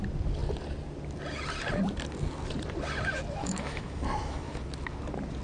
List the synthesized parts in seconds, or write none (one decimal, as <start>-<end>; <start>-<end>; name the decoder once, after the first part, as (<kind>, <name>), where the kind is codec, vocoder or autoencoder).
3.4-4.6 (autoencoder, DAC-VAE)